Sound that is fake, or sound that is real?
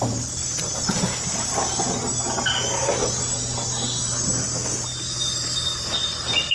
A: real